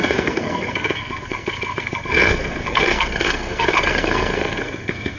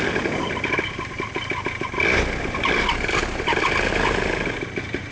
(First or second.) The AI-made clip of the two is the first